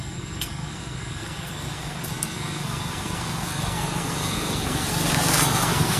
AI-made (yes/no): yes